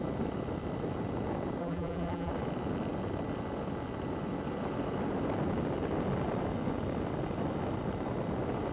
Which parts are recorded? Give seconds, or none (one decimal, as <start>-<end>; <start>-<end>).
0.0-1.6; 2.3-8.7